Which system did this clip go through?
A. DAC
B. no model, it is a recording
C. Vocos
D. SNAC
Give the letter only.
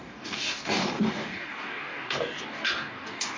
A